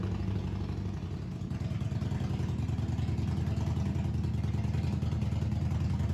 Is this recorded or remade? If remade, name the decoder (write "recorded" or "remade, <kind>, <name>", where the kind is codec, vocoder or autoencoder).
recorded